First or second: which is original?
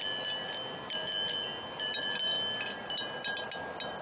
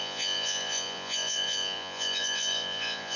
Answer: first